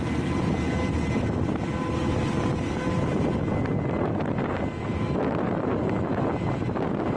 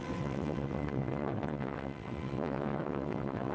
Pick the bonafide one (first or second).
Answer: first